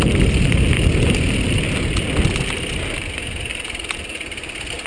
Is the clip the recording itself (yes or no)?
yes